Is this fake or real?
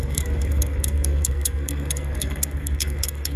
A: fake